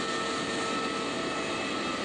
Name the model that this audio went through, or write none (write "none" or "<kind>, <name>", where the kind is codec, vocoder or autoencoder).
none